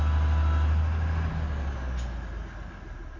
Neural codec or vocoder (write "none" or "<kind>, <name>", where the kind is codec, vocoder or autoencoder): none